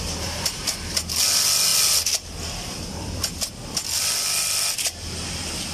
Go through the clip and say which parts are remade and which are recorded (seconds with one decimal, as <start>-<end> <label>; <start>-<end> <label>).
0.0-5.7 recorded